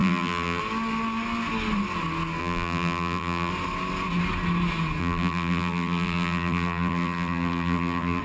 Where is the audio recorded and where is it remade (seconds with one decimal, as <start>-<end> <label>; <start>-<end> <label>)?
0.0-0.6 remade; 0.6-2.4 recorded; 2.4-3.5 remade; 3.5-5.0 recorded; 5.0-8.2 remade